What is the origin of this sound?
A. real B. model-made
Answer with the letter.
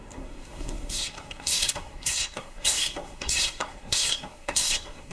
B